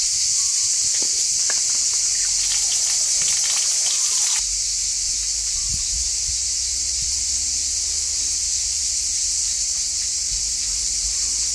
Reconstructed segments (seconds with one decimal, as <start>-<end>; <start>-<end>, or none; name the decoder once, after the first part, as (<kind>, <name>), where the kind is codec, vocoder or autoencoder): none